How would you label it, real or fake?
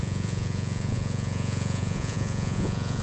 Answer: fake